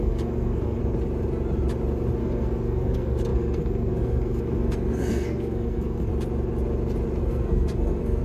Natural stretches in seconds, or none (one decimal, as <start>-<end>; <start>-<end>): 0.8-2.2; 6.1-7.2

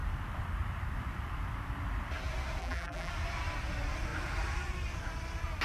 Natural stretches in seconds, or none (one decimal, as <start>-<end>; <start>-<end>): 0.0-2.6; 3.1-5.6

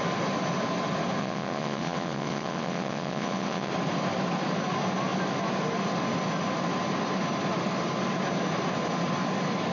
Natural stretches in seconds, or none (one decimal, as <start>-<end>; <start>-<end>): 0.0-1.2; 3.7-9.7

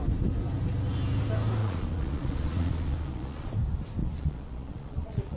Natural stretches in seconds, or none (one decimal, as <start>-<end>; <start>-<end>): 0.0-1.6; 3.5-4.0

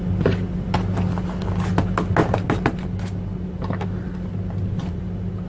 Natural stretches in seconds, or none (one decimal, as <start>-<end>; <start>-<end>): 0.0-2.2

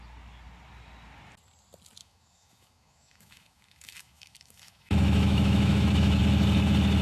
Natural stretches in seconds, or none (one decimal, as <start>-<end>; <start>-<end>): 0.0-2.0; 6.2-7.0

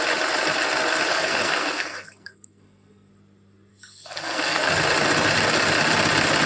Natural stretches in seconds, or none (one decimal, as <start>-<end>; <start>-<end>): 0.0-1.1; 3.1-3.7; 4.7-6.5